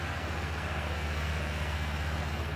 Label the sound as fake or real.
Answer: fake